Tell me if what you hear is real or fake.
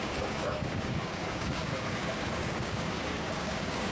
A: fake